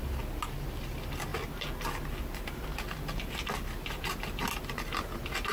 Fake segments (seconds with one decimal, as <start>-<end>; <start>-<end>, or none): none